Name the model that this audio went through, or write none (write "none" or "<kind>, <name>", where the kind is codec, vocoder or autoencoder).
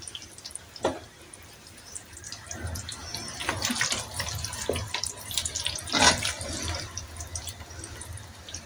none